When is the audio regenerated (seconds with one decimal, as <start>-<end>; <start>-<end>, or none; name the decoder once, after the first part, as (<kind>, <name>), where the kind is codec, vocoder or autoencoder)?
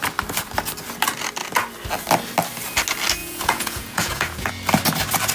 3.2-4.5 (vocoder, Vocos)